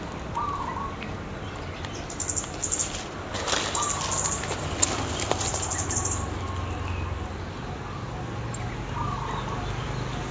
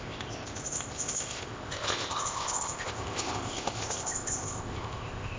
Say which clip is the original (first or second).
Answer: first